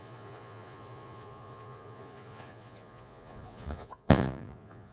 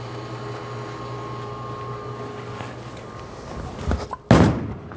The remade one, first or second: first